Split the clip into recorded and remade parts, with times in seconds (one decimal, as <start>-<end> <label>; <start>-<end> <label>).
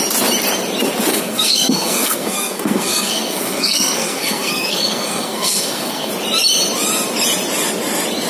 0.0-1.1 recorded; 1.1-6.1 remade; 6.1-8.3 recorded